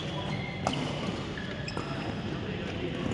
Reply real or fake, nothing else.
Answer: real